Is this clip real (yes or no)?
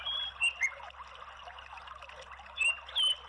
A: yes